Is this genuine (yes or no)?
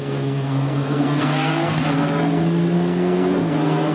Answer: no